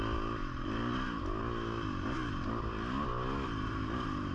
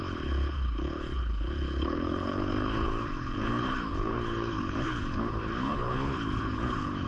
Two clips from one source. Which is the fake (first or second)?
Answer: second